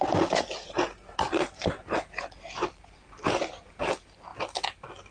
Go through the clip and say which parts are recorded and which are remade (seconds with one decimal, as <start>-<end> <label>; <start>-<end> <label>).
0.0-5.1 recorded